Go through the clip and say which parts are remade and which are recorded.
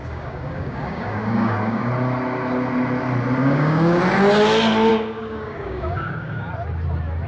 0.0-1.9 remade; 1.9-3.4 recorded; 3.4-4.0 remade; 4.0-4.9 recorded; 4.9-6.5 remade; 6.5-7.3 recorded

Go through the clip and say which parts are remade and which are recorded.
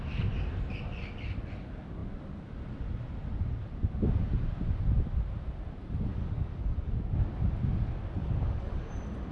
0.0-6.1 recorded; 6.1-6.9 remade; 6.9-8.2 recorded; 8.2-8.9 remade; 8.9-9.3 recorded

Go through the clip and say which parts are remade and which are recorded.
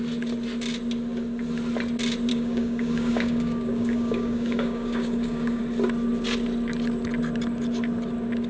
0.0-2.3 recorded; 2.3-5.6 remade; 5.6-8.5 recorded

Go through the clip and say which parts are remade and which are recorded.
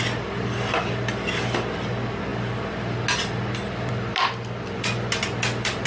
0.0-5.9 recorded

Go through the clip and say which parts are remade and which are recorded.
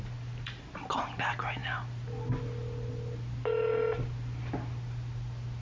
0.0-5.6 recorded